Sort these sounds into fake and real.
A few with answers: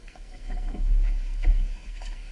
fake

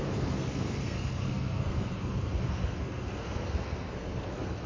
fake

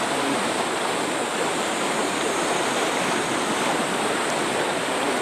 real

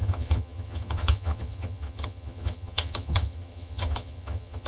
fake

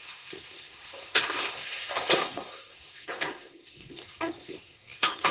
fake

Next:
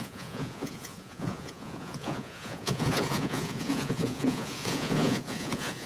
fake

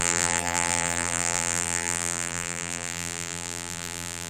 fake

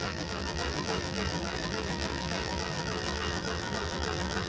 fake